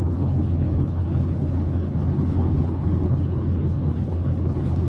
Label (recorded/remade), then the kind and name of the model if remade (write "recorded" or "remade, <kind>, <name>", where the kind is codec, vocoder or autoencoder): remade, codec, HILCodec